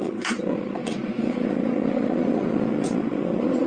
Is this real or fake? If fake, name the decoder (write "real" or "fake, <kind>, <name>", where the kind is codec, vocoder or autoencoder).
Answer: fake, vocoder, Vocos